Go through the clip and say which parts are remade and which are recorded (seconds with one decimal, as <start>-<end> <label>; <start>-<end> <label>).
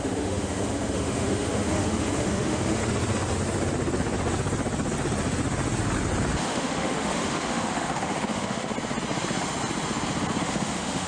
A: 0.0-2.8 remade; 2.8-6.4 recorded; 6.4-8.7 remade; 8.7-10.4 recorded; 10.4-11.1 remade